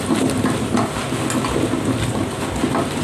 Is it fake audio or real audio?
real